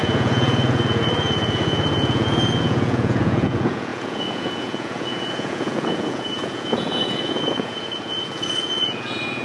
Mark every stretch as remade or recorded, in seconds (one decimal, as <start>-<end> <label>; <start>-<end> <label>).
0.0-9.4 remade